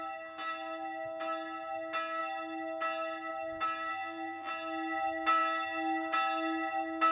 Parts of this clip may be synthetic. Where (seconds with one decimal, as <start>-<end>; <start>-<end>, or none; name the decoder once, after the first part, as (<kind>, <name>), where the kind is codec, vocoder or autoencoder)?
3.9-4.5 (vocoder, BigVGAN v2)

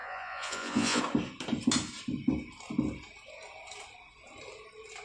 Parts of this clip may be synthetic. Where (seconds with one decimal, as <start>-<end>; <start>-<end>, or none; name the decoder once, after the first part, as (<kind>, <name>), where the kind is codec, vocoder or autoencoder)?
0.0-1.0 (vocoder, Vocos)